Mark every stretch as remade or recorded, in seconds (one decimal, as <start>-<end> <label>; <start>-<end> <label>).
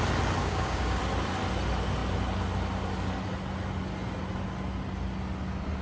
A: 0.0-0.4 recorded; 0.4-1.0 remade; 1.0-5.8 recorded